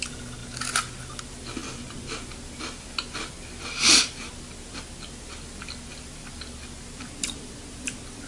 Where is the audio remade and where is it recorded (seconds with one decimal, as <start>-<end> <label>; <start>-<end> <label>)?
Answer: 0.0-8.3 recorded